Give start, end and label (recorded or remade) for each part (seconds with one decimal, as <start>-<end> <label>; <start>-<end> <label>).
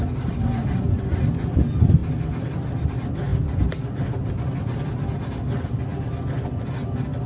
0.0-7.3 recorded